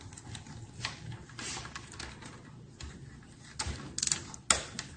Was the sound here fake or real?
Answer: real